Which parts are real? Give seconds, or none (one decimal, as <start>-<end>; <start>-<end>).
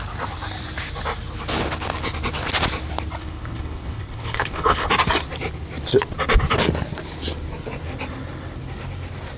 0.0-3.2; 4.9-9.4